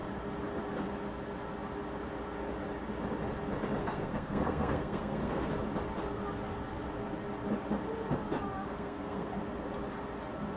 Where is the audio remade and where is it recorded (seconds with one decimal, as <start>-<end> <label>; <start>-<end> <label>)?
0.0-3.8 recorded; 3.8-5.5 remade; 5.5-8.6 recorded; 8.6-9.3 remade; 9.3-10.6 recorded